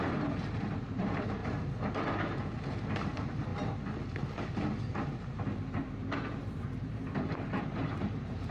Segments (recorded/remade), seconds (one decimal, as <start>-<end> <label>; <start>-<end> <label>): 0.0-1.4 remade; 1.4-2.0 recorded; 2.0-3.5 remade; 3.5-5.3 recorded; 5.3-8.5 remade